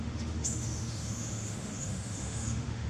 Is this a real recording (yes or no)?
no